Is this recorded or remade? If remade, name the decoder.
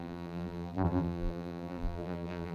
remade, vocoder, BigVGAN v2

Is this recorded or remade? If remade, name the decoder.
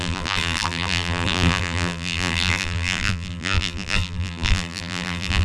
remade, vocoder, BigVGAN v2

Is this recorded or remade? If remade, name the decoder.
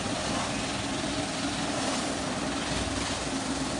remade, vocoder, BigVGAN v2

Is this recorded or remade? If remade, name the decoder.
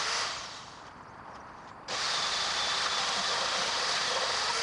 recorded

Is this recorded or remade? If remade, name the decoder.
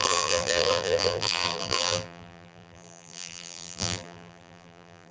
remade, vocoder, BigVGAN v2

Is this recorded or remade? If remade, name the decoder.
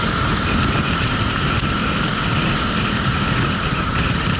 remade, vocoder, BigVGAN v2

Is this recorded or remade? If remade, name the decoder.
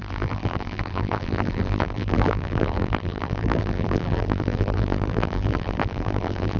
remade, vocoder, BigVGAN v2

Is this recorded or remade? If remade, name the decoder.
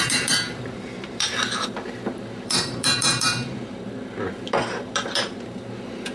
remade, vocoder, BigVGAN v2